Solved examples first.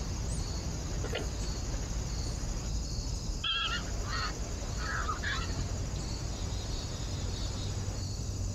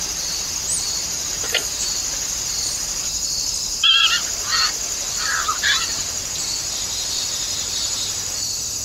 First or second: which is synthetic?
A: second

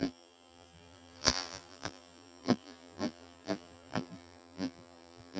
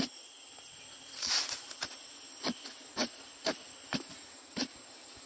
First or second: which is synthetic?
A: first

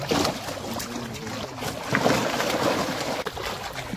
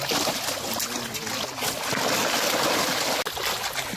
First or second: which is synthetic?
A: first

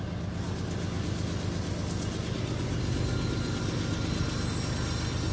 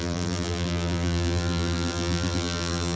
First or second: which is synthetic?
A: second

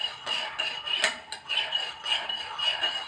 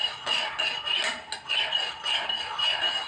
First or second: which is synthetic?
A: first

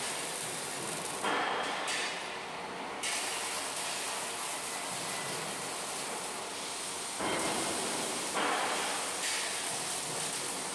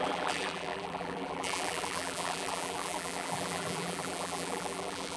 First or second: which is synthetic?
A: second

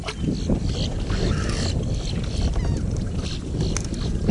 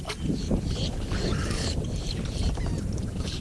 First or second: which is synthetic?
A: second